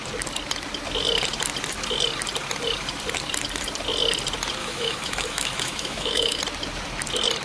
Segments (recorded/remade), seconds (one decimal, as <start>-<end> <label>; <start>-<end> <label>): 0.0-4.6 recorded; 4.6-6.4 remade; 6.4-7.4 recorded